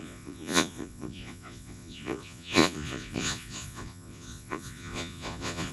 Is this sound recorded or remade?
remade